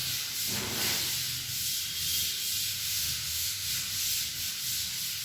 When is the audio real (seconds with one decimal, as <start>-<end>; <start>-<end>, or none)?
0.0-2.7; 3.7-5.2